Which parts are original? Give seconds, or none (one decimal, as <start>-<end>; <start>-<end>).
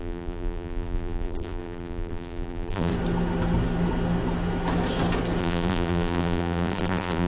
2.9-5.4